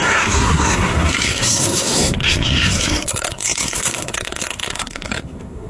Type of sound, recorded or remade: remade